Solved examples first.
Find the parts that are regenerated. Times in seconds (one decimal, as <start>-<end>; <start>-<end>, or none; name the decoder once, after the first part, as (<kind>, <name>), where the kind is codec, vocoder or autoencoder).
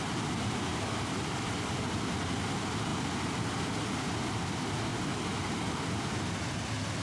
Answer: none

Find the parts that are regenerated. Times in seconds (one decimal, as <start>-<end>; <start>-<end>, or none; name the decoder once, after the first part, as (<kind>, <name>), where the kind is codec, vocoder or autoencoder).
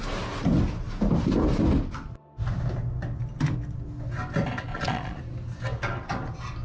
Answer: 4.7-5.2 (vocoder, Vocos)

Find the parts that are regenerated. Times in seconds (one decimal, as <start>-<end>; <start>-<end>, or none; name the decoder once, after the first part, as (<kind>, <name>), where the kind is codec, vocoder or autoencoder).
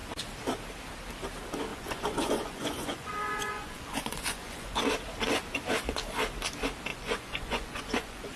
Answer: 1.7-4.8 (vocoder, Vocos); 6.9-8.4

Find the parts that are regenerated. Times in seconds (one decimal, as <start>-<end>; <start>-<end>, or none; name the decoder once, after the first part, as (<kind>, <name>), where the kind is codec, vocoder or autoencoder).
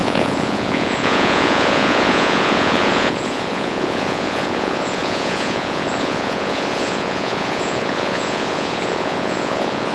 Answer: 0.0-9.9 (vocoder, Vocos)